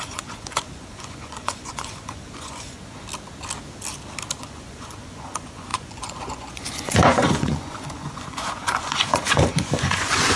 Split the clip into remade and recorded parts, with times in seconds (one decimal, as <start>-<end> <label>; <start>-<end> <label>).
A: 0.0-3.0 remade; 3.0-4.4 recorded; 4.4-10.4 remade